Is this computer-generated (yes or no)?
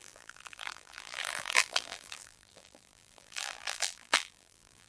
yes